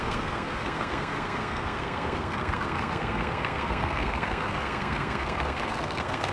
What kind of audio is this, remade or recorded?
remade